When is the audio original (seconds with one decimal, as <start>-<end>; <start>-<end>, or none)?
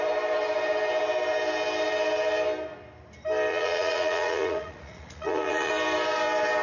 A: 0.0-3.5; 5.7-6.6